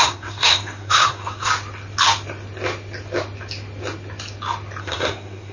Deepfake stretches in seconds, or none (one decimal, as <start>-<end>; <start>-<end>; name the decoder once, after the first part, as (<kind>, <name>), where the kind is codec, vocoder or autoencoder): 0.0-1.5 (codec, SNAC); 4.8-5.5